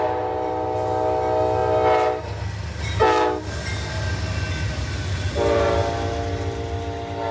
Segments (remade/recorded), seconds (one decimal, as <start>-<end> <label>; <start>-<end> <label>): 0.0-7.3 recorded